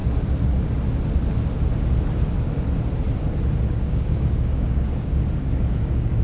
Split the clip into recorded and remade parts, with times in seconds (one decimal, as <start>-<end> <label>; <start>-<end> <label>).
0.0-3.7 recorded; 3.7-6.2 remade